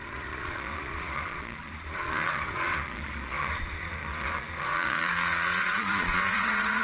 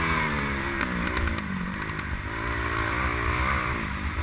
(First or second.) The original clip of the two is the second